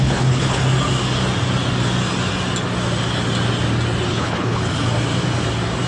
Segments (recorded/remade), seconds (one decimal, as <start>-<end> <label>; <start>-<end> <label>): 0.0-0.6 remade; 0.6-4.1 recorded; 4.1-4.6 remade; 4.6-5.9 recorded